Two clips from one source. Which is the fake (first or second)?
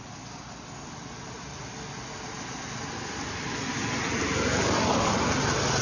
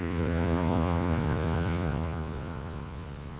second